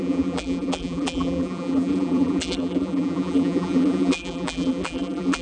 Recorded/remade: remade